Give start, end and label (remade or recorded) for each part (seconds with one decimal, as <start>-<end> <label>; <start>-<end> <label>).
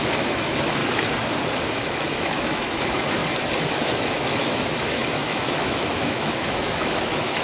0.0-0.8 remade; 0.8-1.5 recorded; 1.5-3.2 remade; 3.2-3.7 recorded; 3.7-7.4 remade